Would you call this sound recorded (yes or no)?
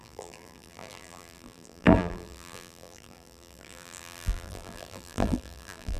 no